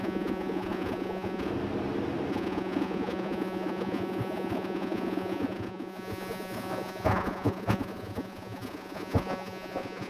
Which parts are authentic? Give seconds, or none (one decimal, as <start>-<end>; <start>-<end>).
1.5-2.3